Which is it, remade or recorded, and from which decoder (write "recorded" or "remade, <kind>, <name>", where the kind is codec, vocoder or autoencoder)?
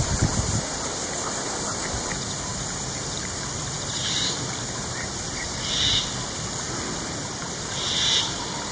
recorded